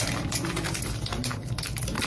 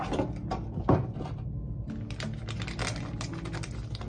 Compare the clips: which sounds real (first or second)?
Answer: second